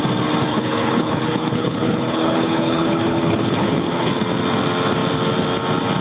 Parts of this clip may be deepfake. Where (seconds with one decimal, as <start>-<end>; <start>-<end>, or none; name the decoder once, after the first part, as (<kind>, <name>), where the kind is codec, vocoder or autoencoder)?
0.5-4.1 (codec, HILCodec)